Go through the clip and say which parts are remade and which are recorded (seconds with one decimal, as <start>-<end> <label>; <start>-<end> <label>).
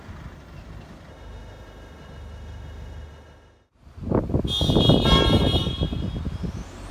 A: 0.0-1.1 recorded; 1.1-3.7 remade; 3.7-6.9 recorded